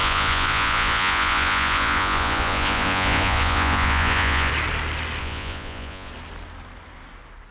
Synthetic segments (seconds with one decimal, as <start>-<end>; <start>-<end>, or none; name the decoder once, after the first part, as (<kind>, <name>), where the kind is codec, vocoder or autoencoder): 0.0-4.5 (vocoder, Vocos); 5.2-6.1